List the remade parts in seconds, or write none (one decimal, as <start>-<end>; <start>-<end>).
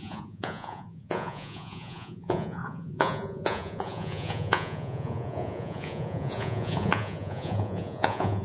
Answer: 0.0-8.4